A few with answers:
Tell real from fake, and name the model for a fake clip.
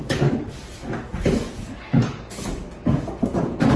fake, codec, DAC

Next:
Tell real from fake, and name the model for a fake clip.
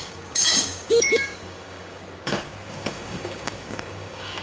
fake, codec, DAC